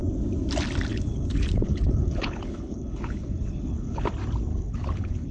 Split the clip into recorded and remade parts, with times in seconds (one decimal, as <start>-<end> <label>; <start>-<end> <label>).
0.0-0.9 recorded; 0.9-4.1 remade; 4.1-4.5 recorded; 4.5-5.3 remade